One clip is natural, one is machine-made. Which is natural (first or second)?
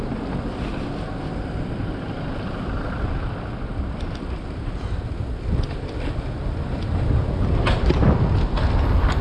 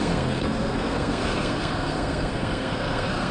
first